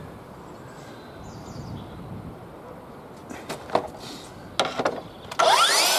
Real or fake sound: real